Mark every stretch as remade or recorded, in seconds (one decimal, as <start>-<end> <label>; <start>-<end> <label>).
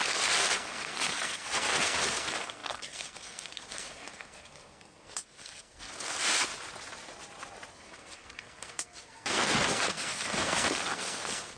0.0-6.5 remade; 6.5-7.7 recorded; 7.7-11.6 remade